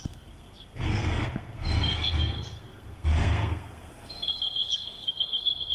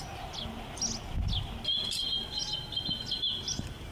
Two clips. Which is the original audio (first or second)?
second